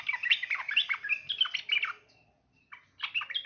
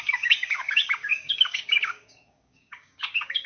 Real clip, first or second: first